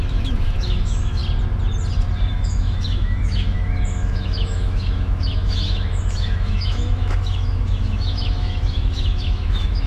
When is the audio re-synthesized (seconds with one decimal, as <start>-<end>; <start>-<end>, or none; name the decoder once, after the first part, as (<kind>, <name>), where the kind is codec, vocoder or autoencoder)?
0.0-1.2 (autoencoder, DAC-VAE); 2.3-9.9